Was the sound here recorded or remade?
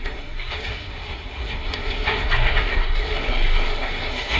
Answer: remade